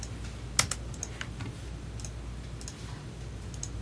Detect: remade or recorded recorded